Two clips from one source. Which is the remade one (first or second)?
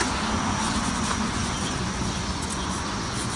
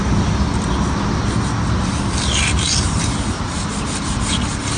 first